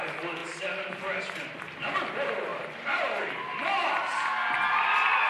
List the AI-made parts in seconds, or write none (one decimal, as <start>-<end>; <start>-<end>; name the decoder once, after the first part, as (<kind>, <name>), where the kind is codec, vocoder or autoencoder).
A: none